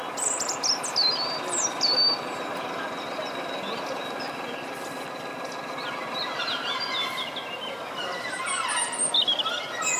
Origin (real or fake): real